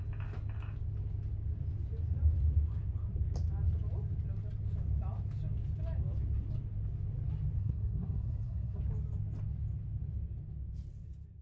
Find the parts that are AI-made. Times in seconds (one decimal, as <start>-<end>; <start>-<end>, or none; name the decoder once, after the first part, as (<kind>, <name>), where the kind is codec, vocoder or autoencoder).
7.6-8.8 (codec, SNAC)